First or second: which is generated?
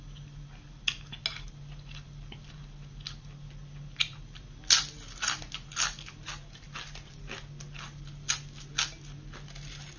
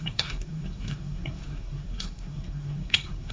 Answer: second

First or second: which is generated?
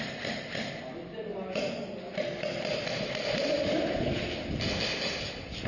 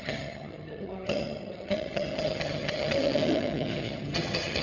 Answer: second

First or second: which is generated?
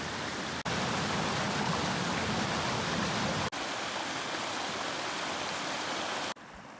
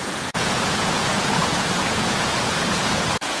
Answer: second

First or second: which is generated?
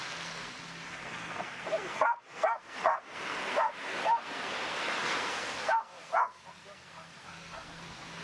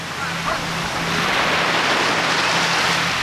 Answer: first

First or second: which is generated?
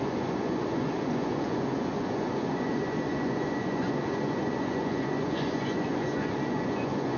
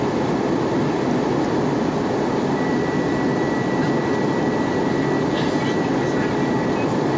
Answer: first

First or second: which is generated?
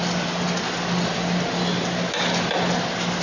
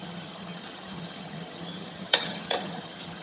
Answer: second